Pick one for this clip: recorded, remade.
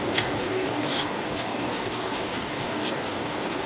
remade